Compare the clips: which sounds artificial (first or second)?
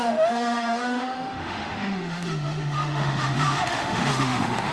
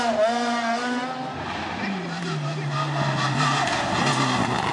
first